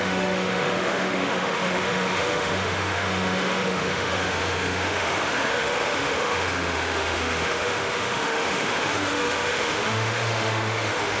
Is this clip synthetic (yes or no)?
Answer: yes